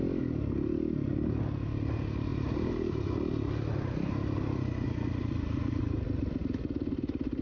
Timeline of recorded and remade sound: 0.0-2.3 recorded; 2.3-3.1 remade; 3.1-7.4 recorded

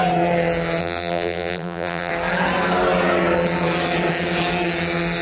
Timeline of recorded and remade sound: 0.0-0.8 recorded; 0.8-2.1 remade; 2.1-5.2 recorded

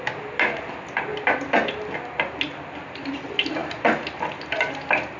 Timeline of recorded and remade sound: 0.0-5.2 recorded

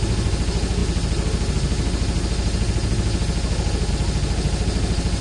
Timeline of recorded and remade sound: 0.0-5.2 recorded

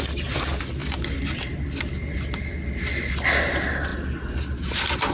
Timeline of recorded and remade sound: 0.0-5.1 recorded

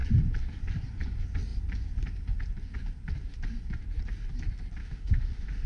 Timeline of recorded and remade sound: 0.0-4.8 recorded; 4.8-5.7 remade

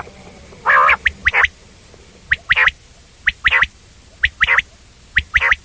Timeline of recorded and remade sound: 0.0-5.6 recorded